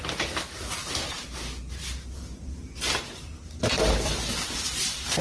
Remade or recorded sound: recorded